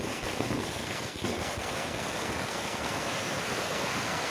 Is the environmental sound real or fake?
fake